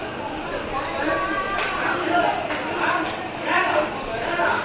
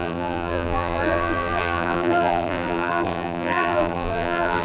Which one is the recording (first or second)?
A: first